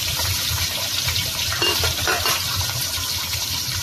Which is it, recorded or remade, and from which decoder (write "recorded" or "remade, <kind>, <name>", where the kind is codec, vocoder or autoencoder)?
recorded